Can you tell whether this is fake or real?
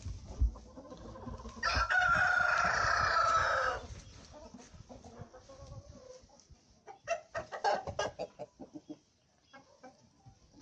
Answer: real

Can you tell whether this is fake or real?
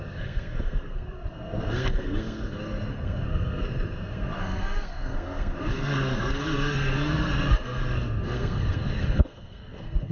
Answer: fake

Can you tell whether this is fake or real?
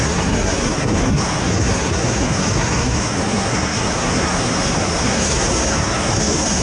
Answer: fake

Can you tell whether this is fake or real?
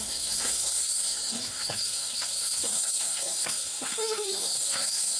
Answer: fake